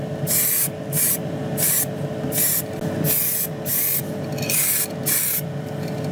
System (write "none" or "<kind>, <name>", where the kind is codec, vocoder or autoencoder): none